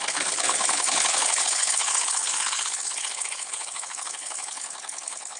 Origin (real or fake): fake